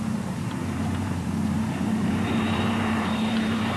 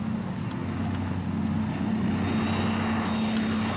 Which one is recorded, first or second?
second